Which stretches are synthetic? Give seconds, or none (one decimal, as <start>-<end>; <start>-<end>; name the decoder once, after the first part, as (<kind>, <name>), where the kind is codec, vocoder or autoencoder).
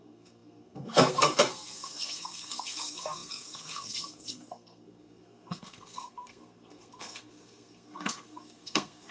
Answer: 0.0-9.1 (codec, SNAC)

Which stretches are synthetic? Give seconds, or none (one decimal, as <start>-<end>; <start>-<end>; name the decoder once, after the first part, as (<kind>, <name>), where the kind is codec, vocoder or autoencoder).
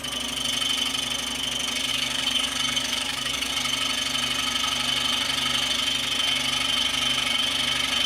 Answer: 1.9-3.5 (codec, DAC)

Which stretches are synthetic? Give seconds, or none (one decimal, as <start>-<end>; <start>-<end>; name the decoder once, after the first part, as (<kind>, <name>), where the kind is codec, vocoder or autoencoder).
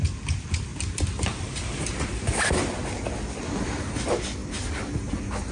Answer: none